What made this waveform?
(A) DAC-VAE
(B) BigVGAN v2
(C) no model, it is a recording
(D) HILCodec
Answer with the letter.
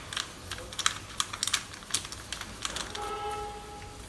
C